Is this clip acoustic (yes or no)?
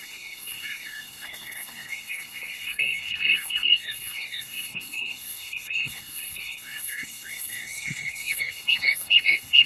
no